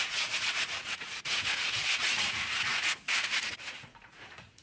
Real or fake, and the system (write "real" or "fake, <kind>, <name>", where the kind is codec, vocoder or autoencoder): fake, vocoder, Vocos